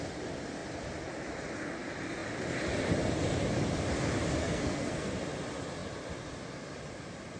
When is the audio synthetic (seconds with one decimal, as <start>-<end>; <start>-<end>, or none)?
4.4-5.1